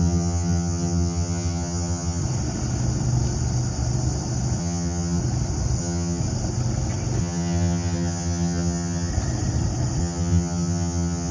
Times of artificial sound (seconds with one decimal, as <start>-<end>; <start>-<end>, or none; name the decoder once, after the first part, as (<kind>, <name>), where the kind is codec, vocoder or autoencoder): 0.0-2.2 (vocoder, HiFi-GAN); 4.6-5.2; 5.8-6.2; 7.2-9.1; 10.0-11.3